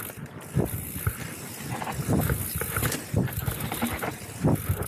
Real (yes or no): yes